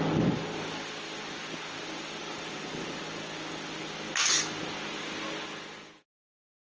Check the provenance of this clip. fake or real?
real